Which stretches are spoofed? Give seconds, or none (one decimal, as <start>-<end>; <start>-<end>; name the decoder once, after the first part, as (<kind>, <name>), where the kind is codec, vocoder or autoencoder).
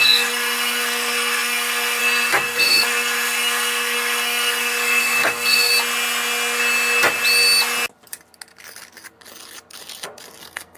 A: 0.0-5.7 (codec, SNAC); 10.4-10.8